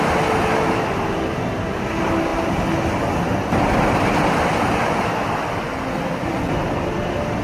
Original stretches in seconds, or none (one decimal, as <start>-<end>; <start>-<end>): 0.0-7.4